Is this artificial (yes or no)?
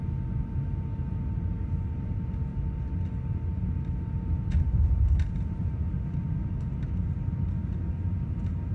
no